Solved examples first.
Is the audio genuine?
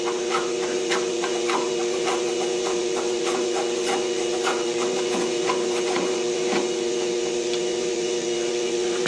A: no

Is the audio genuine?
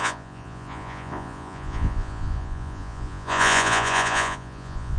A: no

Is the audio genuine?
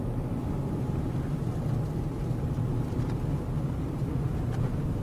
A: yes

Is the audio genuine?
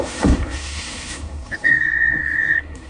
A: no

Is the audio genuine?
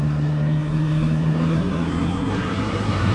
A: no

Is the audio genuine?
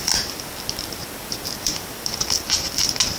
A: yes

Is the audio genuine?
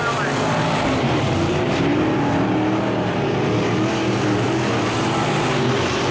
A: yes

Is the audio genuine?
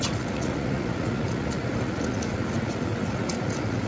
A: no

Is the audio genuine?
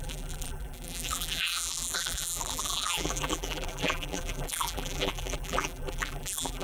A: no